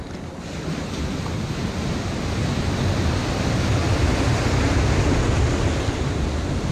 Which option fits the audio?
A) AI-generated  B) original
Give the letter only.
B